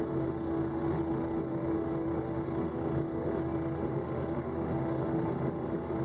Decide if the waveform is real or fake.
fake